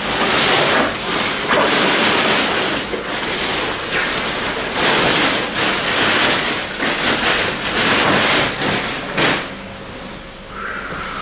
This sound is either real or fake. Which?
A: real